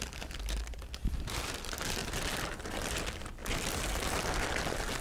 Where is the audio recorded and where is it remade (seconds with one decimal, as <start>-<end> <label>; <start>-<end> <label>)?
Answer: 0.0-2.0 remade; 2.0-2.9 recorded; 2.9-3.4 remade; 3.4-4.6 recorded; 4.6-5.0 remade